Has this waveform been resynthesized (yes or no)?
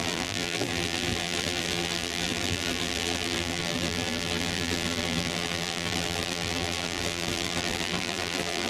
yes